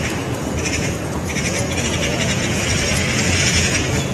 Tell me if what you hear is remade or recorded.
remade